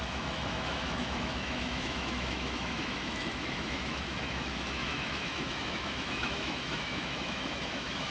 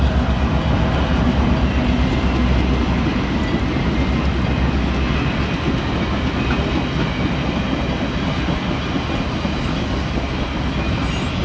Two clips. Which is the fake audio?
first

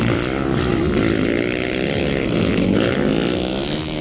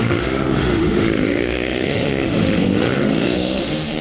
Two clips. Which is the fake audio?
second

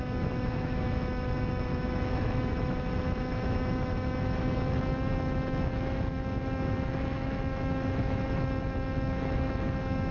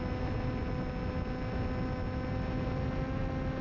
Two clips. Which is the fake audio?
first